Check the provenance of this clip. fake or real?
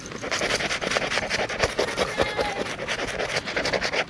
real